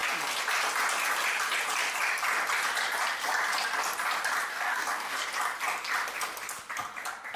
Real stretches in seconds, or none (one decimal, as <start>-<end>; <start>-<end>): 0.0-4.5; 5.2-7.4